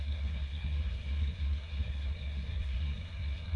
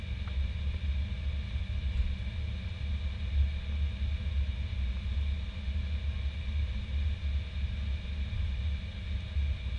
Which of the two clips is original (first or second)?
second